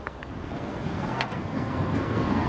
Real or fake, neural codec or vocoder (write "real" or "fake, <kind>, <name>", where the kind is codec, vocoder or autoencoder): fake, codec, SNAC